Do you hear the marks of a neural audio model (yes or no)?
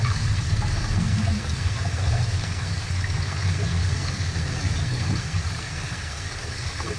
yes